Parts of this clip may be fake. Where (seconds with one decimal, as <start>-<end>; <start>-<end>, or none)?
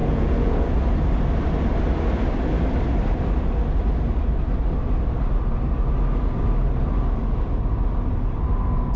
0.0-0.8